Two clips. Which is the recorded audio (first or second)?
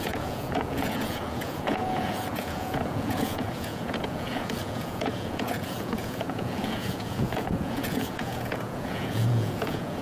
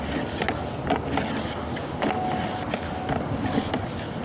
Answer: second